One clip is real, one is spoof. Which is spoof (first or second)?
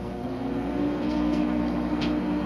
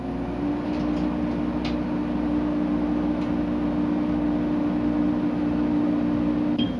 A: first